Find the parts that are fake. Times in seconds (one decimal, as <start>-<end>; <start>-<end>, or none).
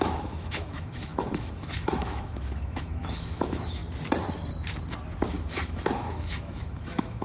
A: 0.0-3.8; 5.3-7.2